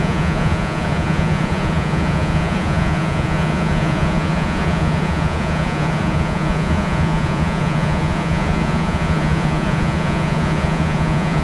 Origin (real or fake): fake